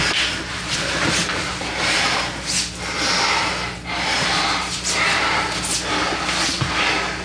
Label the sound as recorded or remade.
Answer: recorded